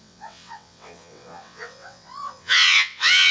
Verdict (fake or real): fake